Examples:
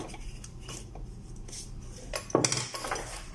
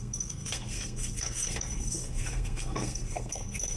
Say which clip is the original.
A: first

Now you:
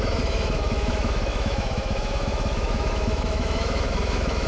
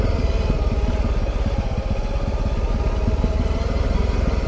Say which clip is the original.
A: second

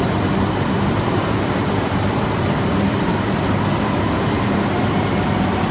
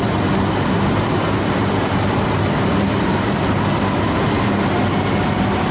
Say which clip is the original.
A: second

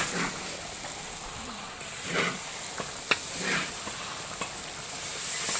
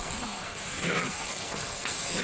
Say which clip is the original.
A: first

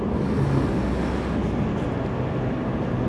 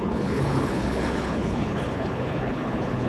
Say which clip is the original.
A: first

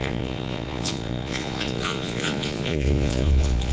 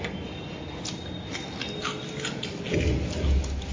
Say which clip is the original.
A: second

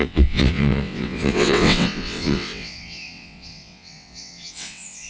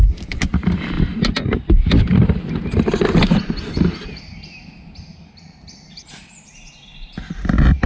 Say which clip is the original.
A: second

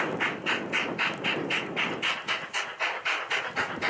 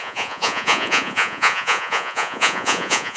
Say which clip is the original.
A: first